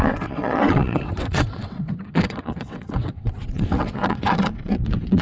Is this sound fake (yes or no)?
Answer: yes